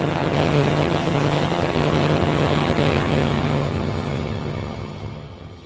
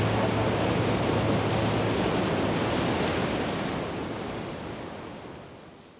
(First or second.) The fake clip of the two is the first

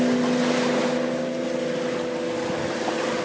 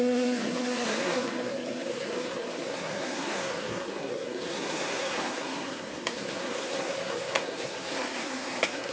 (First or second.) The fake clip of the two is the second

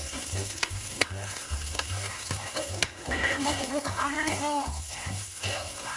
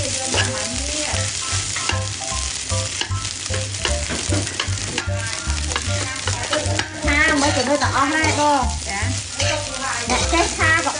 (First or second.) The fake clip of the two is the first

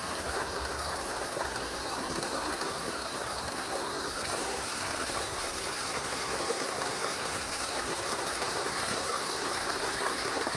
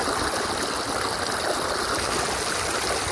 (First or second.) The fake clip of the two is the first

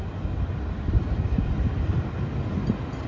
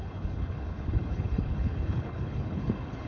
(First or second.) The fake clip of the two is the second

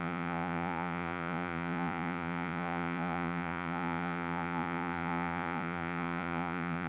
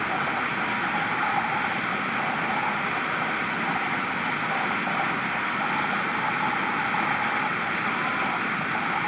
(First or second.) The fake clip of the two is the first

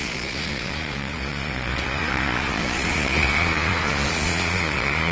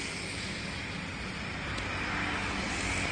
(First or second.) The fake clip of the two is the first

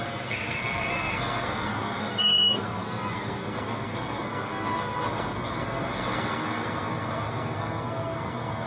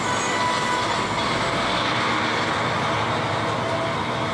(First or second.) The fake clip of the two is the first